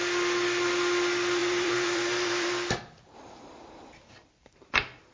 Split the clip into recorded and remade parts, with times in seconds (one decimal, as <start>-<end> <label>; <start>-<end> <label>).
0.0-1.4 recorded; 1.4-4.5 remade; 4.5-5.1 recorded